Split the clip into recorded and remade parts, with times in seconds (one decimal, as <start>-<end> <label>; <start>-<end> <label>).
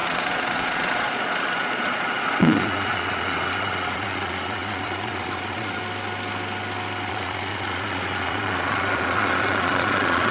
0.0-5.8 remade; 5.8-7.1 recorded; 7.1-10.3 remade